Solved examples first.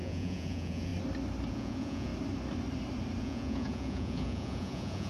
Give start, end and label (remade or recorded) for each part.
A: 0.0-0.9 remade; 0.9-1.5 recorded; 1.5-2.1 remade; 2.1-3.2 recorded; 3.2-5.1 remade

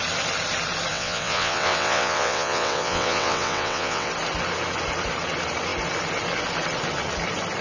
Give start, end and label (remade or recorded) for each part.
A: 0.0-0.9 recorded; 0.9-4.1 remade; 4.1-7.6 recorded

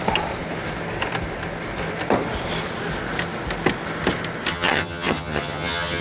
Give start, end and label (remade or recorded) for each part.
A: 0.0-4.5 recorded; 4.5-6.0 remade

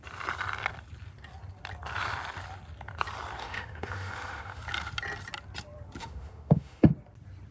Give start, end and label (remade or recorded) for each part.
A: 0.0-3.4 recorded; 3.4-4.6 remade; 4.6-6.0 recorded; 6.0-6.9 remade; 6.9-7.5 recorded

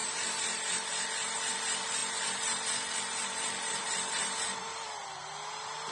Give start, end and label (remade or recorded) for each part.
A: 0.0-5.9 remade

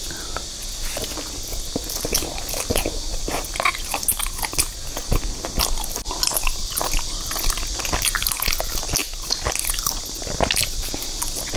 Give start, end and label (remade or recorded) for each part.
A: 0.0-11.6 recorded

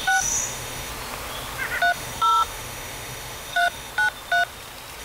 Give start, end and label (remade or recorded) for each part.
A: 0.0-0.9 remade; 0.9-1.9 recorded; 1.9-3.9 remade; 3.9-5.0 recorded

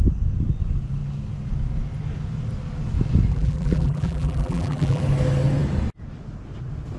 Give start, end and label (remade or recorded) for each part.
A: 0.0-3.3 recorded; 3.3-5.0 remade; 5.0-7.0 recorded